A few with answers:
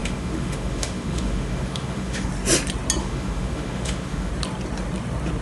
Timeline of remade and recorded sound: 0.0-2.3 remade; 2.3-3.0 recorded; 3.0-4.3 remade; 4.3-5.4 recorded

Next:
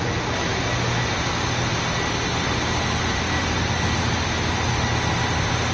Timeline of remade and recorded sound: 0.0-5.7 recorded